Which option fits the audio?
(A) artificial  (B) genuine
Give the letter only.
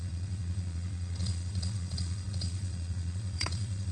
A